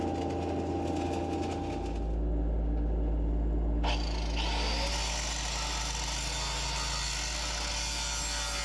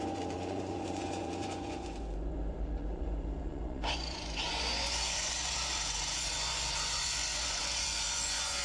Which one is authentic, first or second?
first